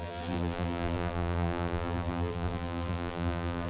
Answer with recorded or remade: remade